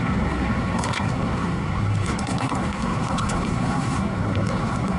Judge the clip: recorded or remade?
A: remade